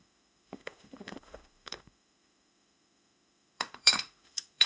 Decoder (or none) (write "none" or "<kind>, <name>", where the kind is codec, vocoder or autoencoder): autoencoder, DAC-VAE